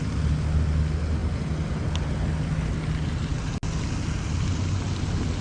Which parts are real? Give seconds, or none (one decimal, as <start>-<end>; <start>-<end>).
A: 0.0-5.4